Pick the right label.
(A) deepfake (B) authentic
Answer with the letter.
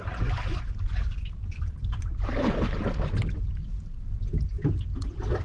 B